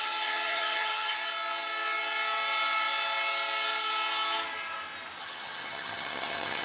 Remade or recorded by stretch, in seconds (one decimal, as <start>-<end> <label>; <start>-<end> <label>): 0.0-1.2 remade; 1.2-5.2 recorded; 5.2-6.6 remade